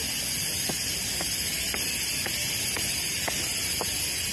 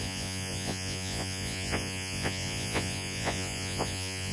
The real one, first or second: first